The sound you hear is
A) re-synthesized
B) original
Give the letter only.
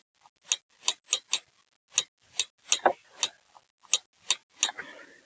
B